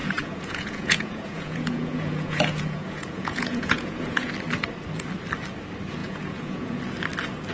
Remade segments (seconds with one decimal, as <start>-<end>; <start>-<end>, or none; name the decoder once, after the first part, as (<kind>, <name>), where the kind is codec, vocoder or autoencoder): 0.0-4.3 (vocoder, Vocos); 6.0-6.8